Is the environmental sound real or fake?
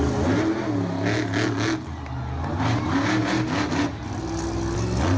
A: real